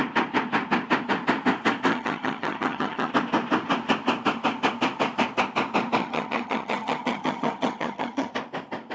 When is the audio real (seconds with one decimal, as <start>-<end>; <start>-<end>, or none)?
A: 0.0-1.9; 3.1-6.0; 8.3-8.9